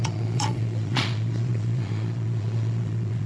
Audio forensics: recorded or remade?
remade